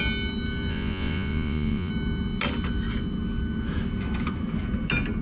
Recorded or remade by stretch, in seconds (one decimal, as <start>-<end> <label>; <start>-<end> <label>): 0.0-0.7 recorded; 0.7-1.9 remade; 1.9-5.2 recorded